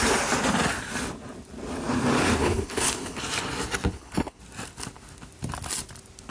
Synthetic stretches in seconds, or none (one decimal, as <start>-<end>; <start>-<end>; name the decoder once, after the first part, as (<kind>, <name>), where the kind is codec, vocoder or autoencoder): 2.4-3.2 (codec, HILCodec); 3.9-4.4